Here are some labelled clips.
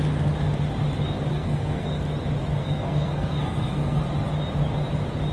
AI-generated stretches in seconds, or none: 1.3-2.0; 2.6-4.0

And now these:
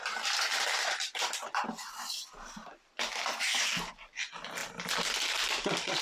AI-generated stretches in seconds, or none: none